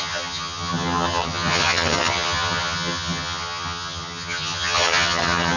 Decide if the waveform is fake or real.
fake